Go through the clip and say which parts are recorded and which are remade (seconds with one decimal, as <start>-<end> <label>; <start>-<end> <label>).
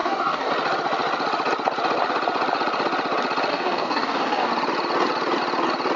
0.0-0.5 remade; 0.5-3.5 recorded; 3.5-4.5 remade; 4.5-6.0 recorded